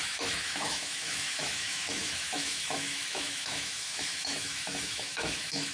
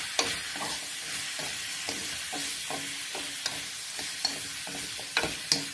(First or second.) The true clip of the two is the second